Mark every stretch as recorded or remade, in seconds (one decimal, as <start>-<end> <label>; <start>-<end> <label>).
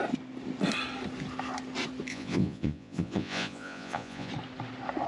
0.0-2.1 recorded; 2.1-4.3 remade; 4.3-5.1 recorded